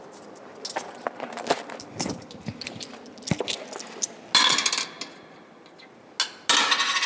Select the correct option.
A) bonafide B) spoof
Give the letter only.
A